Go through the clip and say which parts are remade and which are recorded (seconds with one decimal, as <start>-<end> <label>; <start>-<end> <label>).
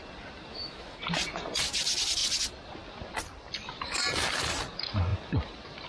0.0-0.5 recorded; 0.5-1.0 remade; 1.0-5.9 recorded